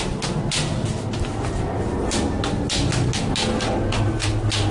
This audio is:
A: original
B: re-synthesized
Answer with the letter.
A